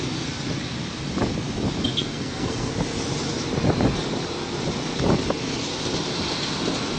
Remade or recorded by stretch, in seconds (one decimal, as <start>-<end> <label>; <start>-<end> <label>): 0.0-1.9 recorded; 1.9-2.7 remade; 2.7-7.0 recorded